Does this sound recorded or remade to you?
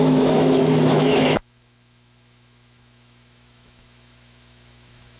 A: remade